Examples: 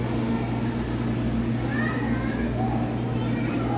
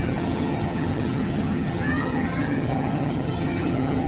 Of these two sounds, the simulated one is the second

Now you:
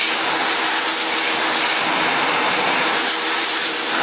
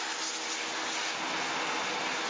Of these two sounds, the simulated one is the first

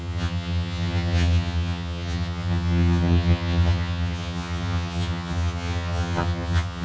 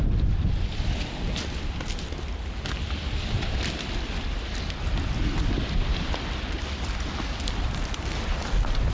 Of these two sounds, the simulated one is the first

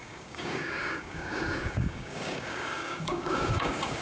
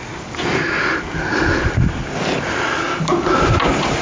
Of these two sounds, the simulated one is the first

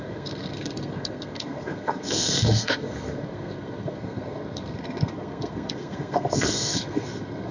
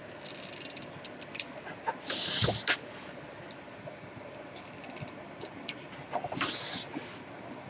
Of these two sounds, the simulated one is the first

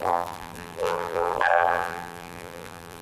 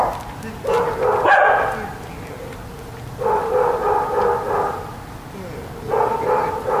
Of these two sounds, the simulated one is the first